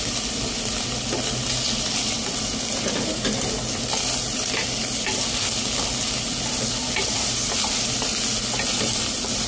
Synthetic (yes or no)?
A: no